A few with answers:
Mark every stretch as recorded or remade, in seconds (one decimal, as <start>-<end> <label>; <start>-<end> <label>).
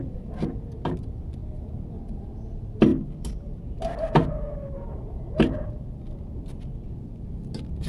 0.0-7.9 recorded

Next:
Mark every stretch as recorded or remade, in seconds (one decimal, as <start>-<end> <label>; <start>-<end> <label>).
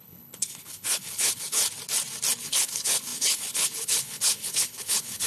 0.0-1.6 remade; 1.6-2.4 recorded; 2.4-5.3 remade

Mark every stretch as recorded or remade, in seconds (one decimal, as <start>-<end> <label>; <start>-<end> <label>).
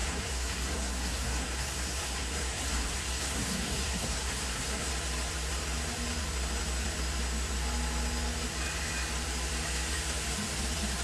0.0-4.9 remade; 4.9-11.0 recorded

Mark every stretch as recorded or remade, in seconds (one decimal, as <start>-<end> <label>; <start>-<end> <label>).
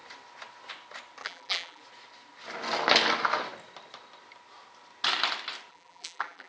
0.0-1.2 recorded; 1.2-1.8 remade; 1.8-5.7 recorded; 5.7-6.5 remade